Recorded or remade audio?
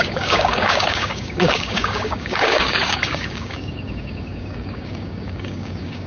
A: remade